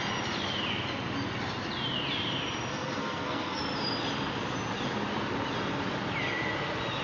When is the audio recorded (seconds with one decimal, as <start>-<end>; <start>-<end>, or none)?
0.0-2.7; 3.6-7.0